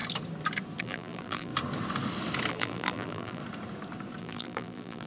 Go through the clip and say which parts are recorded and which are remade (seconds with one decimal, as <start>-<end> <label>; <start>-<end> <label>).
0.0-0.8 recorded; 0.8-1.5 remade; 1.5-2.5 recorded; 2.5-3.4 remade; 3.4-4.2 recorded; 4.2-5.1 remade